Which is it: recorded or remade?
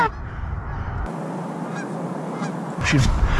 recorded